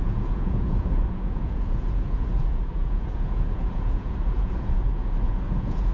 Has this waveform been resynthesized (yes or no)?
yes